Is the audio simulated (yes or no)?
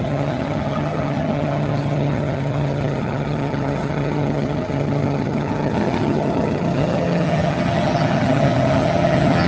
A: yes